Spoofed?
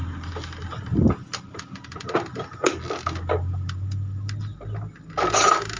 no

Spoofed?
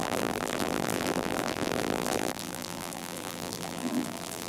yes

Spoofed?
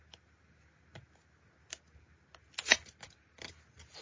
no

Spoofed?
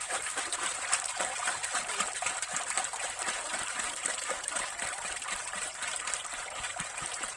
yes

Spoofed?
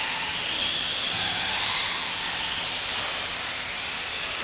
no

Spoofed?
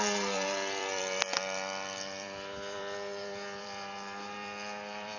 yes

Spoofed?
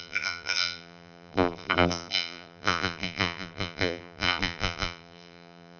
yes